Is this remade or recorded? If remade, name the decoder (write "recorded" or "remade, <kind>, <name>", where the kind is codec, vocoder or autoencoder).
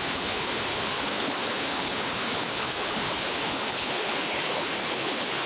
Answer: remade, codec, HILCodec